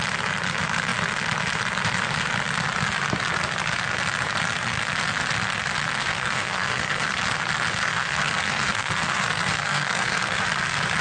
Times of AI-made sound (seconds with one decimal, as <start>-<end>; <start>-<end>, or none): 6.1-7.2; 7.8-10.4